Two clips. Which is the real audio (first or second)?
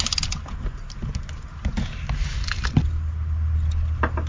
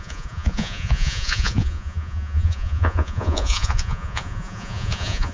first